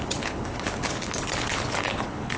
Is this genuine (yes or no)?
no